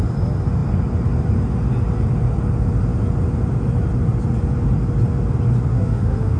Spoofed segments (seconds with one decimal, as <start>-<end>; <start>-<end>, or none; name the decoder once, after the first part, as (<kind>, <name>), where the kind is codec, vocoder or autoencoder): 5.7-6.4 (autoencoder, DAC-VAE)